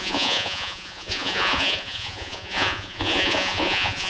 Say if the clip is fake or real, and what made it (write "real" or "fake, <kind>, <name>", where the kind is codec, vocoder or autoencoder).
fake, vocoder, Vocos